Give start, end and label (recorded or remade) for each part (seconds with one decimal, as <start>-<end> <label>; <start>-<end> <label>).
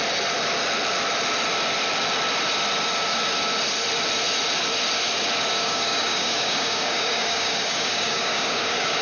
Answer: 0.0-5.5 recorded; 5.5-9.0 remade